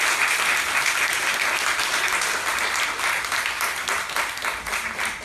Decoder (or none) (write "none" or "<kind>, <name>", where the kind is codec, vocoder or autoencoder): none